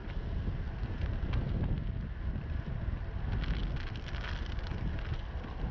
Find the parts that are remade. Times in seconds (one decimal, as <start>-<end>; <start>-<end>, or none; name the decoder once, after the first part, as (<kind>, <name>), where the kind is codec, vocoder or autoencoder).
none